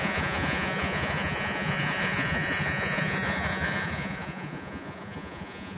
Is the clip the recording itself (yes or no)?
no